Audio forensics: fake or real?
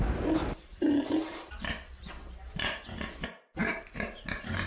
real